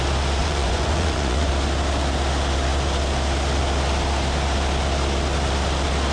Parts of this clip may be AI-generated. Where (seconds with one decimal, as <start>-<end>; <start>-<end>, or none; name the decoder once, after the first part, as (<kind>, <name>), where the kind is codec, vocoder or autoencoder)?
0.4-1.5 (vocoder, Vocos)